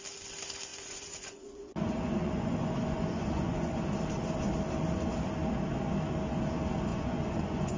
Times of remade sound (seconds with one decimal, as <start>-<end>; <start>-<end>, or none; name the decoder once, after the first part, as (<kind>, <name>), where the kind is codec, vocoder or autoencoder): 0.7-3.8 (vocoder, Vocos); 6.9-7.8